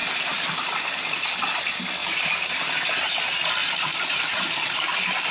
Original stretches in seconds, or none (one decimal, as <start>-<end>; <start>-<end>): 0.8-2.0; 2.7-3.6